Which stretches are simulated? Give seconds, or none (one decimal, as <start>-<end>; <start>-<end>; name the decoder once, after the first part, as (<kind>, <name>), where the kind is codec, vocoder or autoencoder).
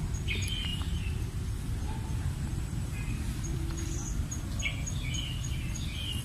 0.7-4.3 (vocoder, BigVGAN v2)